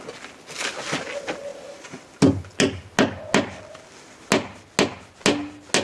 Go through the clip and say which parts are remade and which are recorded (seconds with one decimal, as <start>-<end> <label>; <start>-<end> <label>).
0.0-5.8 recorded